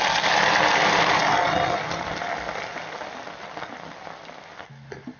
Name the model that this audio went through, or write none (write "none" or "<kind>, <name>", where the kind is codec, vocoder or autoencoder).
none